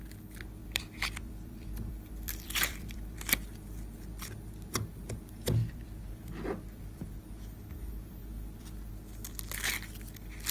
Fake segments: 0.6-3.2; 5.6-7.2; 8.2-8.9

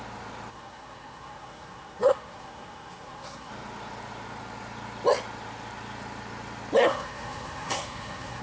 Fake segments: 0.5-3.5; 6.8-8.4